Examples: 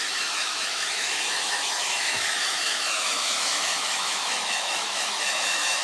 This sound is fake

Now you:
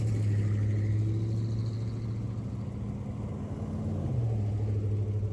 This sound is real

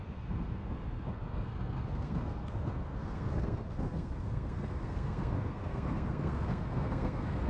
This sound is fake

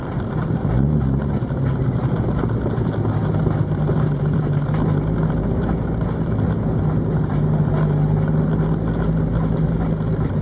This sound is real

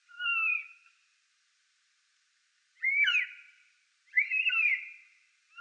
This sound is fake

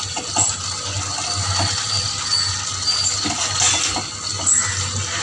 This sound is real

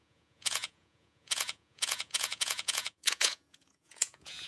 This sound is fake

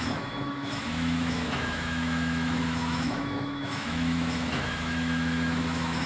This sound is fake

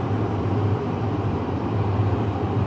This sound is fake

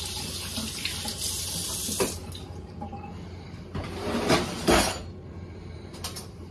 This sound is real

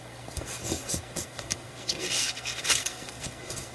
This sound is fake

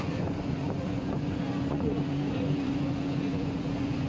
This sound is fake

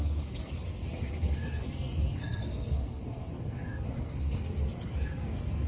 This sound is fake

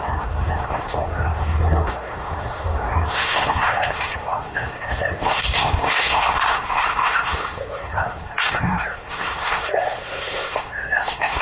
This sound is fake